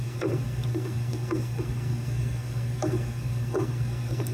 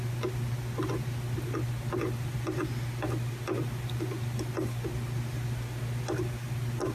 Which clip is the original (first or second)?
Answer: second